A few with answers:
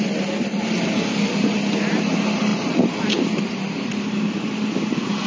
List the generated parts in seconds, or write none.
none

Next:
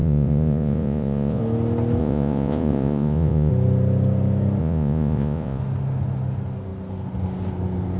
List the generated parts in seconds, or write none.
0.0-1.4 (vocoder, Vocos); 2.0-3.5; 4.6-5.6

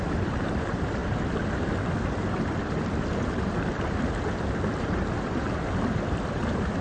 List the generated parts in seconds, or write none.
none

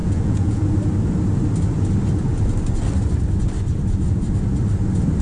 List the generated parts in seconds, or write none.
0.0-0.6 (vocoder, Vocos)

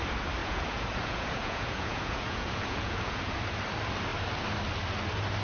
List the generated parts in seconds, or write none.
0.4-3.6 (vocoder, Vocos)

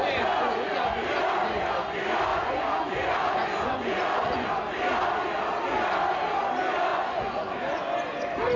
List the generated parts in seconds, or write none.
0.0-1.0 (vocoder, Vocos); 2.3-4.5; 6.9-7.6